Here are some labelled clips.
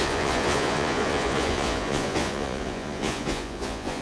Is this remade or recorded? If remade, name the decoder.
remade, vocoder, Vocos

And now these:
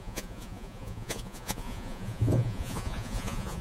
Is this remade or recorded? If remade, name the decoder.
remade, vocoder, Vocos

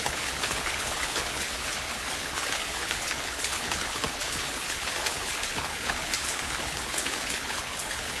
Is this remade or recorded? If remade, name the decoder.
remade, codec, HILCodec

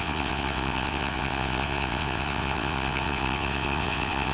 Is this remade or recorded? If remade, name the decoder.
remade, vocoder, WaveNeXt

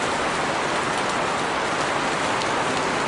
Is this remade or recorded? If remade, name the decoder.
recorded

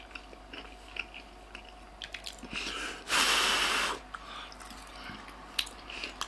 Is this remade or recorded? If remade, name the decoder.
recorded